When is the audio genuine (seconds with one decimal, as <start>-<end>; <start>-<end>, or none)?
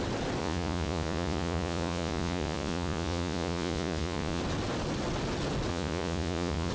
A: 0.0-0.4; 4.4-5.7